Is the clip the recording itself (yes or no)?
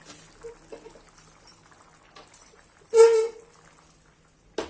yes